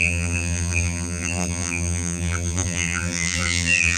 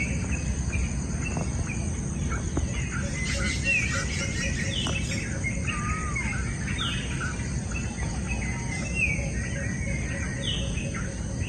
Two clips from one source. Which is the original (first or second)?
second